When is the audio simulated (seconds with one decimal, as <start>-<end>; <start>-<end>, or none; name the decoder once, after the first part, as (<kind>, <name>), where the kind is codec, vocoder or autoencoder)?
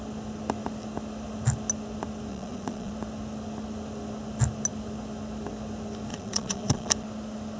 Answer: 2.3-2.9 (vocoder, Vocos); 6.1-6.9